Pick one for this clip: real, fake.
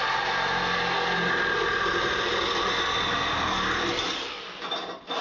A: real